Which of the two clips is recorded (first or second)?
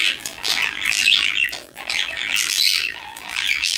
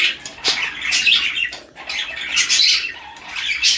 second